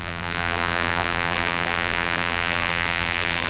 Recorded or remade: remade